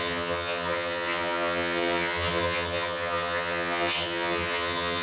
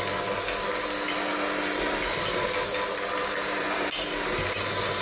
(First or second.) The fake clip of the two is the first